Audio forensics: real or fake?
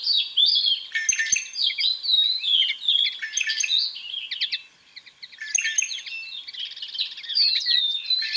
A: real